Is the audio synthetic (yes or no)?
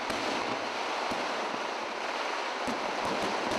yes